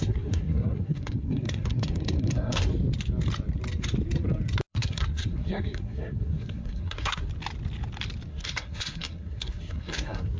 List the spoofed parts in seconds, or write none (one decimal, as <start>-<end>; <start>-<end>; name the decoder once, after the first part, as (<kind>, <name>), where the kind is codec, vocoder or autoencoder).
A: 0.0-2.7 (codec, SNAC); 4.7-7.3; 8.3-10.4